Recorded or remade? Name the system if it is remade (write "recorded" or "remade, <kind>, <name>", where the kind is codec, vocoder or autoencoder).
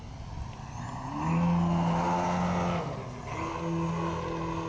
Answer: recorded